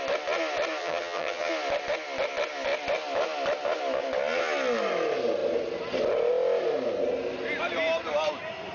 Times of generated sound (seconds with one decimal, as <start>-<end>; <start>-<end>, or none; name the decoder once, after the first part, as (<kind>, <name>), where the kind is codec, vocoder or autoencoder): 0.8-1.5 (vocoder, HiFi-GAN)